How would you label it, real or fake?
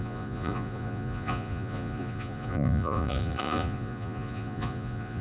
fake